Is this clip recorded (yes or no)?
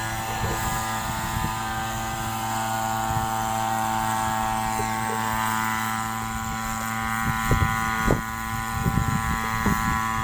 yes